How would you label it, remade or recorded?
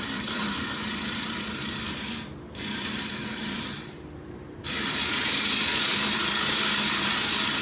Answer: remade